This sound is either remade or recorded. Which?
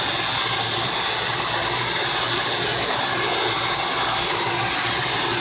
recorded